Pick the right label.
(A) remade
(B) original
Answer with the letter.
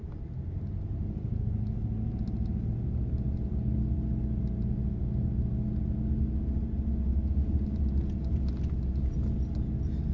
B